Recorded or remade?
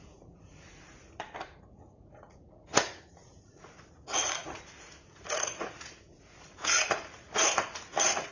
remade